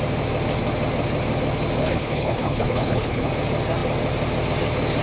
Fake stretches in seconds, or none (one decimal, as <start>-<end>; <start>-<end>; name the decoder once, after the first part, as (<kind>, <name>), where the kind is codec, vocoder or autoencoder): 1.8-3.3 (codec, HILCodec)